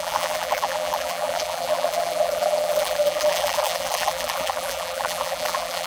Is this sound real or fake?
fake